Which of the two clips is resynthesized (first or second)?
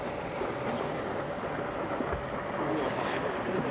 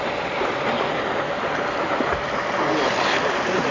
second